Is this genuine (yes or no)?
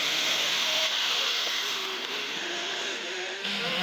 no